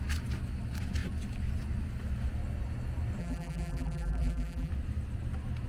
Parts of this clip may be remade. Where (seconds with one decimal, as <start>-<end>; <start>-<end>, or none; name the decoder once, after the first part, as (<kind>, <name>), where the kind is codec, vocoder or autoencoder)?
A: 3.2-4.7 (vocoder, BigVGAN v2)